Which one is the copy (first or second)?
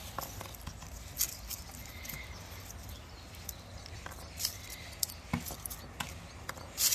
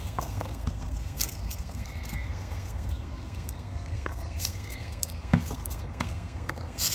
second